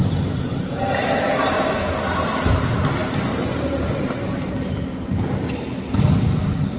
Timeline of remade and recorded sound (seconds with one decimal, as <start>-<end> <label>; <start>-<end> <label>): 0.0-6.8 recorded